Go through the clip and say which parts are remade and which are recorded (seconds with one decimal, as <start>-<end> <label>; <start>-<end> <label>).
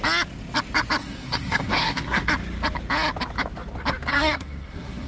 0.0-1.0 recorded; 1.0-2.3 remade; 2.3-4.1 recorded; 4.1-5.1 remade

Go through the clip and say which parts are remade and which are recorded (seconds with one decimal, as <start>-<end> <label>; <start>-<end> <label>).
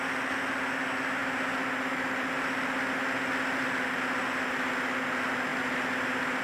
0.0-6.4 recorded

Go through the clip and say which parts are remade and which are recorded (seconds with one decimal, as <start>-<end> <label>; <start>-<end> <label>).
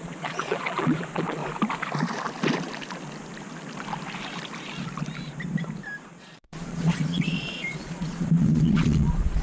0.0-1.4 remade; 1.4-6.1 recorded; 6.1-9.4 remade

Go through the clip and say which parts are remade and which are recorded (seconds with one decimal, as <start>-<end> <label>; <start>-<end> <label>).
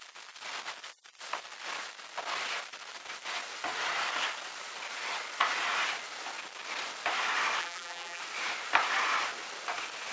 0.0-7.6 recorded; 7.6-8.2 remade; 8.2-10.1 recorded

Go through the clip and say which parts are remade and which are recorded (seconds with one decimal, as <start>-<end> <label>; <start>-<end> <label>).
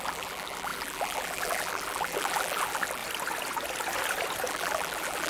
0.0-3.0 remade; 3.0-4.5 recorded; 4.5-5.3 remade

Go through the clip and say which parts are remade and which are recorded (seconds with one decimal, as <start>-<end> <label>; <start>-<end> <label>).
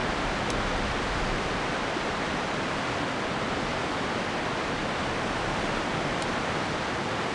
0.0-7.3 recorded